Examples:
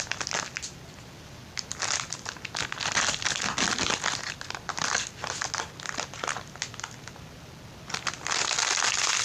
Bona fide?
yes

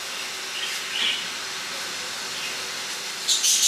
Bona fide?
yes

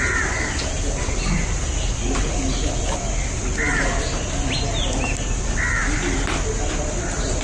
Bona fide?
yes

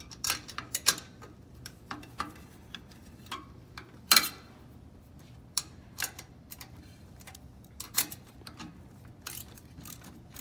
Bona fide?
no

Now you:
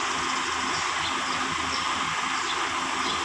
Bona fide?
yes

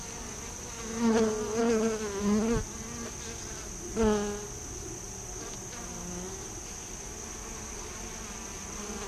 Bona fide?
yes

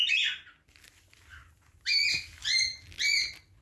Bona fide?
yes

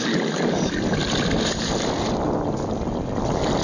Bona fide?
yes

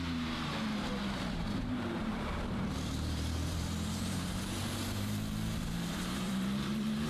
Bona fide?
no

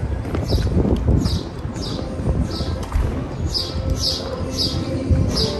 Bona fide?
yes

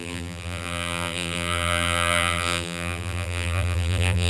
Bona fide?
no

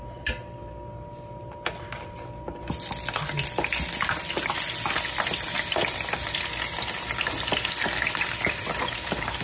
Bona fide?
yes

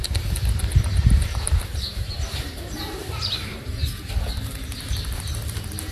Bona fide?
no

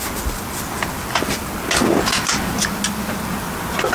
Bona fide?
yes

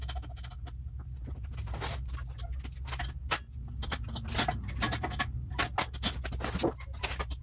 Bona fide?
yes